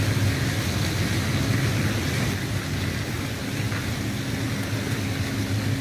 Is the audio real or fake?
real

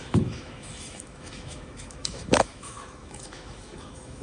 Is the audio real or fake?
fake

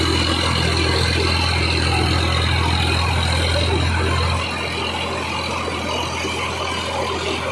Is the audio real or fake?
real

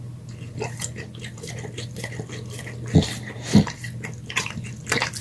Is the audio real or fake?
real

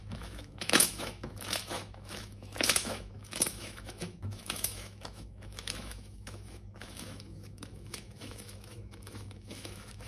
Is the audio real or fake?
fake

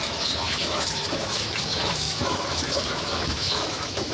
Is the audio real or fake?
fake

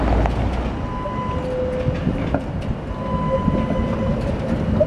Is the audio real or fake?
real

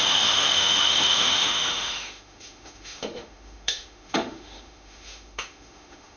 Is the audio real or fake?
fake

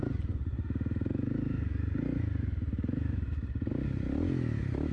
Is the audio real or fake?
real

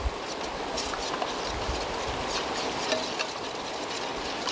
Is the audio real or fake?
real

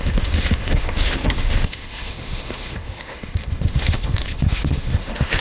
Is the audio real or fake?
fake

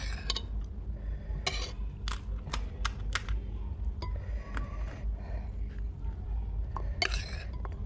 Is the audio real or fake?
real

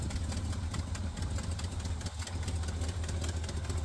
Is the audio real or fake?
real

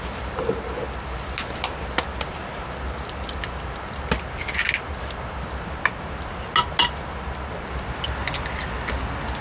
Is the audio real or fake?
real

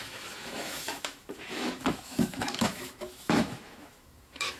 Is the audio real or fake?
fake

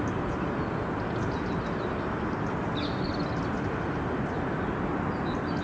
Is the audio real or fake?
real